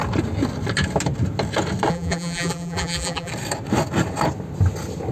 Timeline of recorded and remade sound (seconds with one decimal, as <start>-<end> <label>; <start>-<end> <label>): 0.0-1.9 recorded; 1.9-3.3 remade; 3.3-5.1 recorded